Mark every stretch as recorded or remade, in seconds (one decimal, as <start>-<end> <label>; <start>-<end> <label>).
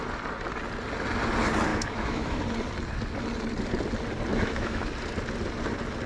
0.0-1.7 recorded; 1.7-2.4 remade; 2.4-4.3 recorded; 4.3-4.8 remade; 4.8-6.1 recorded